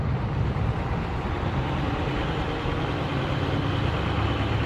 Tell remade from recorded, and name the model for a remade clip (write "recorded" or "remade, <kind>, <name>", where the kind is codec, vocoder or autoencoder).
recorded